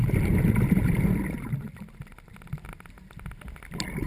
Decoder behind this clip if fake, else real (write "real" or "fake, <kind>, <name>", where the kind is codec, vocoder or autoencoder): real